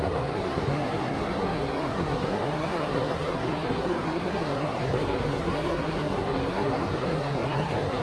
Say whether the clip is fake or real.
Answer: fake